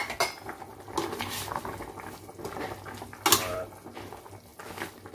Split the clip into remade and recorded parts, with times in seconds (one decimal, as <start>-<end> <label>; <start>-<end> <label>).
0.0-5.1 recorded